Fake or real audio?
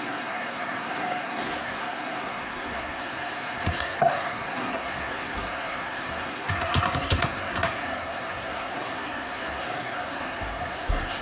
fake